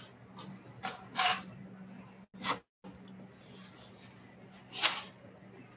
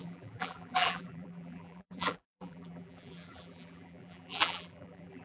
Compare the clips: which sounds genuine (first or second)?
first